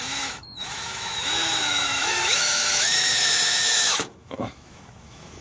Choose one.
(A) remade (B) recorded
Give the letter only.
A